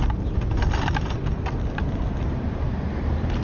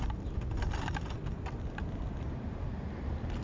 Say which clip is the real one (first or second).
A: first